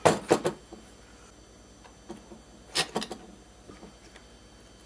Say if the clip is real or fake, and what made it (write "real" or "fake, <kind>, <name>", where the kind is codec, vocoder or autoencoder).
real